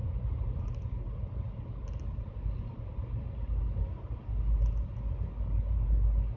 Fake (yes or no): no